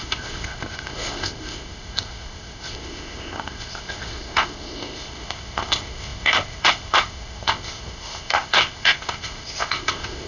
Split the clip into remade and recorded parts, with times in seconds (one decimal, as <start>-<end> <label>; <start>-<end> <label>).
0.0-10.3 remade